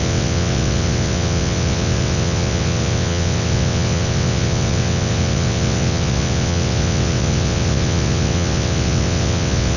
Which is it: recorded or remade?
remade